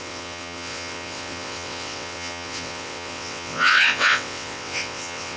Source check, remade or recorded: remade